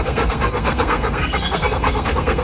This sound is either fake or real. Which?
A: fake